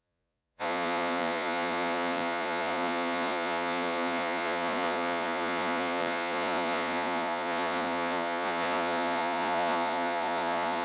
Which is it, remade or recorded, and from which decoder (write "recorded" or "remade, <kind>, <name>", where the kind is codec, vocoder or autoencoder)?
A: remade, vocoder, Vocos